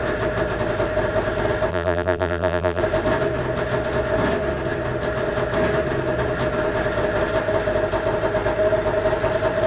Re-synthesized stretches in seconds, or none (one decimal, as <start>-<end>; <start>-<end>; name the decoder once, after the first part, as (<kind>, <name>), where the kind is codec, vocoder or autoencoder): 1.7-2.8 (vocoder, BigVGAN v2)